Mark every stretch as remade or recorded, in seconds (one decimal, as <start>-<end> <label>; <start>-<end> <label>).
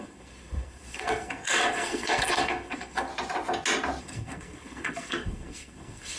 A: 0.0-3.1 remade; 3.1-4.0 recorded; 4.0-6.2 remade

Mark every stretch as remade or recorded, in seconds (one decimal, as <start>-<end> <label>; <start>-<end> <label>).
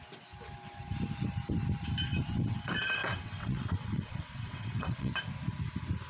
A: 0.0-2.1 recorded; 2.1-5.1 remade; 5.1-6.1 recorded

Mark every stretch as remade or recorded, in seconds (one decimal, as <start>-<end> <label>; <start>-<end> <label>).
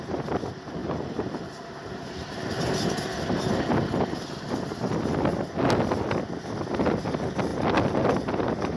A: 0.0-0.8 recorded; 0.8-2.7 remade; 2.7-8.8 recorded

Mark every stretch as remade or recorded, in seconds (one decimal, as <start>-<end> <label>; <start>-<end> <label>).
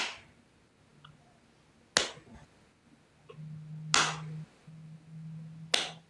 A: 0.0-6.1 recorded